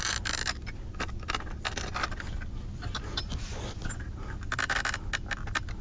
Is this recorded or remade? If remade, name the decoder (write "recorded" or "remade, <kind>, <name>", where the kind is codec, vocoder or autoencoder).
recorded